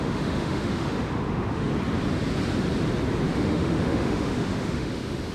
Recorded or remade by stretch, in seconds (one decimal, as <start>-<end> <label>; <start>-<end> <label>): 0.0-1.7 remade; 1.7-3.3 recorded; 3.3-5.3 remade